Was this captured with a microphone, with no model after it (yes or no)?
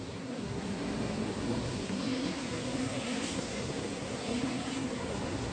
no